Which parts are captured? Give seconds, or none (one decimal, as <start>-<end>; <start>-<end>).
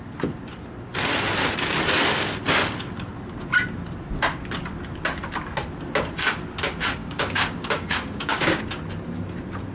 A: 0.0-7.0; 8.6-9.7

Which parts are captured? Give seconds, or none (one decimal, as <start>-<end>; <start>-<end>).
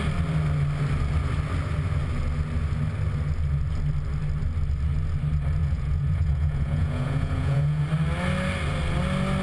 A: 0.0-5.6; 7.8-9.4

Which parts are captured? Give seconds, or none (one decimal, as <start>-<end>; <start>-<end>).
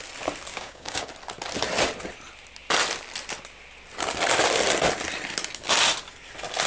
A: 0.0-0.5; 1.1-6.7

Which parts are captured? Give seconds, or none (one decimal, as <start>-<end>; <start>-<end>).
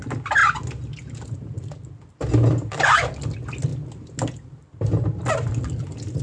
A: 0.0-6.2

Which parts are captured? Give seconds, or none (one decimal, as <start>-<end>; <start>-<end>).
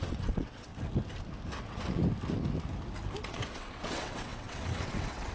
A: 0.7-1.6; 2.0-3.3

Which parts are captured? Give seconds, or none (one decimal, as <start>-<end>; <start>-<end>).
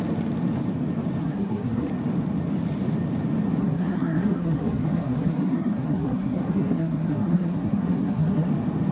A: 0.0-1.2; 1.9-3.6; 8.5-8.9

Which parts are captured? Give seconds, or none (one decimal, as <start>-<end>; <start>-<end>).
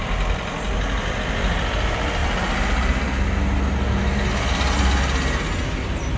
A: 0.0-6.2